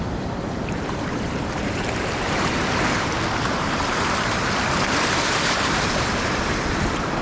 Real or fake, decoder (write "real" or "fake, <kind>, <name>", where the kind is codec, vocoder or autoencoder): fake, vocoder, BigVGAN v2